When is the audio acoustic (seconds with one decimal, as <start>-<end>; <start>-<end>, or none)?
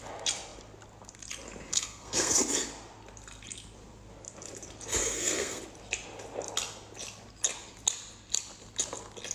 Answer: 0.0-1.7; 2.4-5.0; 5.6-9.3